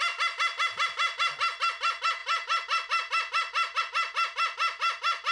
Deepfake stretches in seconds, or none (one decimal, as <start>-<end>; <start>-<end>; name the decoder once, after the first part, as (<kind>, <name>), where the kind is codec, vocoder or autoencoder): none